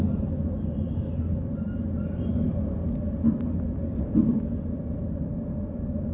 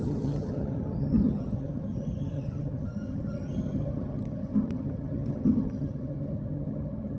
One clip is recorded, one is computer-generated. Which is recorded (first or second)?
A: first